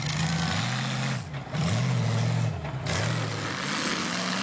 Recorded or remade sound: recorded